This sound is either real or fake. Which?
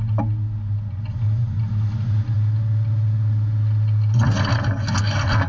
real